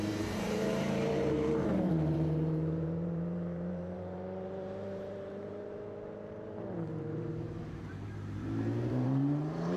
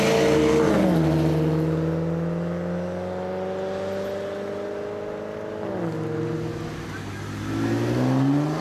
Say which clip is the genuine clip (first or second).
second